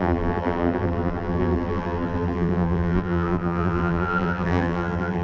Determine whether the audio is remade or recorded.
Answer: remade